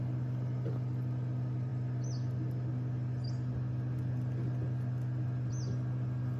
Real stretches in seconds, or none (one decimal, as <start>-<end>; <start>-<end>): 0.0-6.4